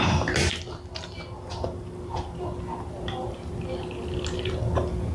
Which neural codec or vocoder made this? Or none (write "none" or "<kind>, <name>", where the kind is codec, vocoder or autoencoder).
none